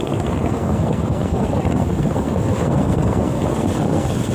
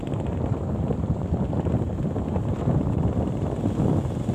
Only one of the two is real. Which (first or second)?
second